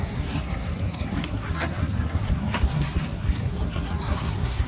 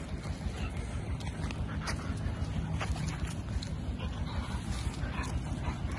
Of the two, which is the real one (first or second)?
second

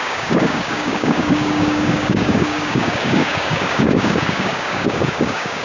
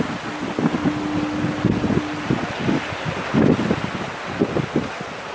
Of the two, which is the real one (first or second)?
second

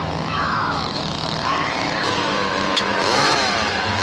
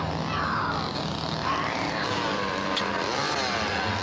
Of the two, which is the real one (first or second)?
second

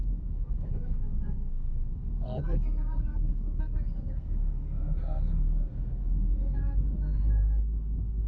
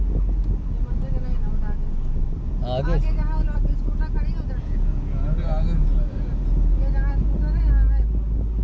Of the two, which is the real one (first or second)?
second